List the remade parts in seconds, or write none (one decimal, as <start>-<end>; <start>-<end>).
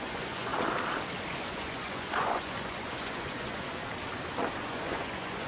0.0-0.5; 1.3-3.8; 4.6-5.5